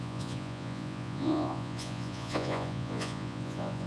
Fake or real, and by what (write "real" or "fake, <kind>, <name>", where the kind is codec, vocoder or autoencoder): fake, vocoder, Vocos